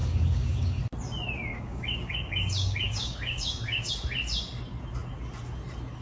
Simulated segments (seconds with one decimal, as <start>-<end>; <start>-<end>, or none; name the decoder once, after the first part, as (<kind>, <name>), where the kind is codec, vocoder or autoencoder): 0.0-0.8 (codec, DAC); 1.5-3.9